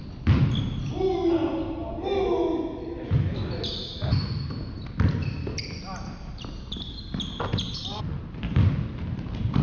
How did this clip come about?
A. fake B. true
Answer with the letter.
B